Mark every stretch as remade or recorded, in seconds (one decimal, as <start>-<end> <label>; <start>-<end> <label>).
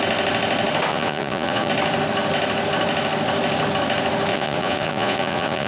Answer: 0.0-0.9 recorded; 0.9-1.7 remade; 1.7-4.3 recorded; 4.3-5.7 remade